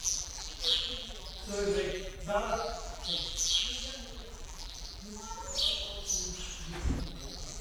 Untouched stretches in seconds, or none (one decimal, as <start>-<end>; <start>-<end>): 1.4-1.9; 5.5-7.0